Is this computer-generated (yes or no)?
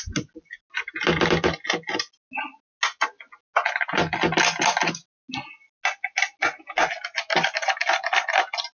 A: no